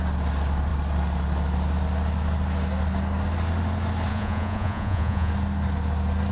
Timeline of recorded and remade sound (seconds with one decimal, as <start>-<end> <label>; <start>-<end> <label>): 0.0-4.1 recorded; 4.1-5.3 remade; 5.3-6.3 recorded

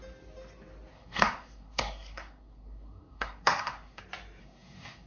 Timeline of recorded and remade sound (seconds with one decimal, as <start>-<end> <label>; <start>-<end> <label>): 0.0-0.9 recorded; 0.9-4.0 remade; 4.0-4.4 recorded; 4.4-5.1 remade